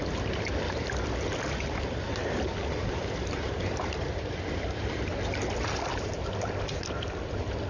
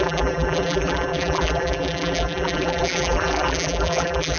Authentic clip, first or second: first